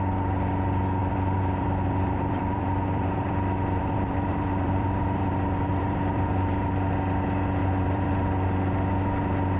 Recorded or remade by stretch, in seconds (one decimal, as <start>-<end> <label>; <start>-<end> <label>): 0.0-1.0 recorded; 1.0-5.3 remade; 5.3-5.7 recorded; 5.7-6.3 remade; 6.3-7.6 recorded; 7.6-8.1 remade; 8.1-9.6 recorded